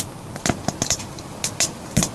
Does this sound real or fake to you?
real